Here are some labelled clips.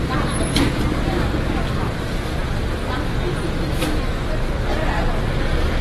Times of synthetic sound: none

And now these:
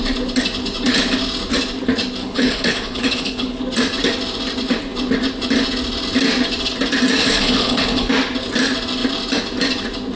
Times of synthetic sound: 2.2-3.6 (codec, HILCodec); 7.2-8.1

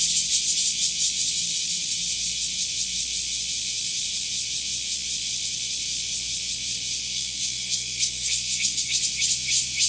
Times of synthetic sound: 7.0-9.0 (codec, SNAC)

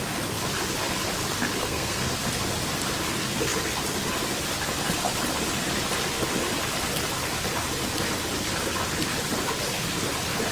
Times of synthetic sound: 1.6-2.1 (codec, SNAC)

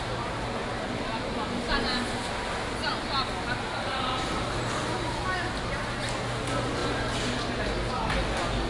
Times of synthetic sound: none